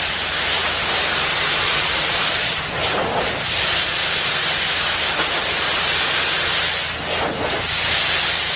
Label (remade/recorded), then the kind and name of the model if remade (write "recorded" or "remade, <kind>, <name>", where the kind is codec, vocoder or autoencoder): recorded